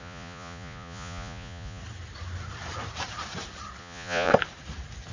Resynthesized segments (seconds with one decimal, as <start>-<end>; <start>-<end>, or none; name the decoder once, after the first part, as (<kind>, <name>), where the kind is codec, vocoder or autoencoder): 0.0-1.8 (vocoder, Vocos); 3.8-4.3

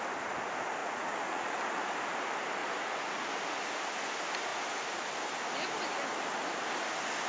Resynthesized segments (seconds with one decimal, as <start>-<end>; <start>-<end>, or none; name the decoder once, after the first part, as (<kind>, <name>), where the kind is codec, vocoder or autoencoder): 0.8-1.6 (vocoder, Vocos); 2.6-3.2